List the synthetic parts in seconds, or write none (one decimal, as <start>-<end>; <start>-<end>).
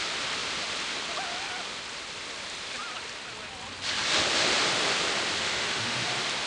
5.4-6.1